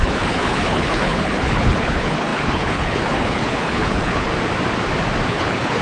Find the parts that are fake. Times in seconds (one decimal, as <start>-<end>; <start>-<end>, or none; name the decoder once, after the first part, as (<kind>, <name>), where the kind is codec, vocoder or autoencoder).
0.0-4.3 (codec, HILCodec); 5.3-5.8